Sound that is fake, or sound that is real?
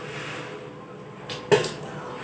real